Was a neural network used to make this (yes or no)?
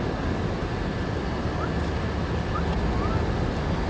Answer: no